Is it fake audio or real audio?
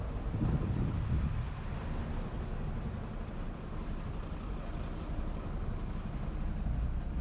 real